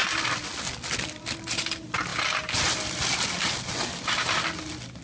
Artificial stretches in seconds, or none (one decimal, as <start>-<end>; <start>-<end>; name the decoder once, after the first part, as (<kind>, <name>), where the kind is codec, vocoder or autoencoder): 0.0-0.6 (vocoder, BigVGAN v2); 2.1-3.7